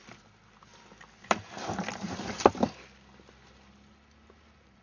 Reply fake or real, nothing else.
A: real